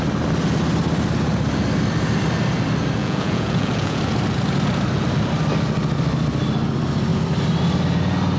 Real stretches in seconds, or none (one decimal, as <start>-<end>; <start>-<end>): 0.0-3.0; 4.0-8.4